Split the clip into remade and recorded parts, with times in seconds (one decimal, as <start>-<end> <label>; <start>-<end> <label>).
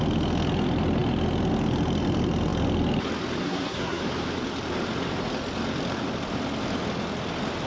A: 0.0-3.4 recorded; 3.4-4.0 remade; 4.0-7.7 recorded